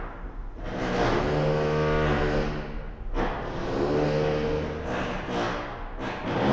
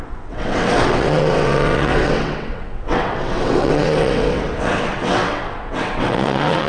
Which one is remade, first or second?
second